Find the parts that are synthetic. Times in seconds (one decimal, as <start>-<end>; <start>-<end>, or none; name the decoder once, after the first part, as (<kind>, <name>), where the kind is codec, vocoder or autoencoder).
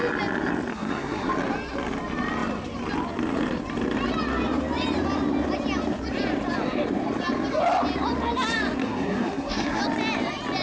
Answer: 0.7-1.3 (codec, SNAC); 8.8-9.8